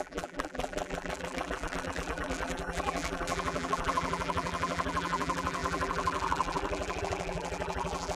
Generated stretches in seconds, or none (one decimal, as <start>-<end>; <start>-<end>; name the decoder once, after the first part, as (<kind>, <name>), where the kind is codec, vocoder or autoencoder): 0.0-8.2 (vocoder, BigVGAN v2)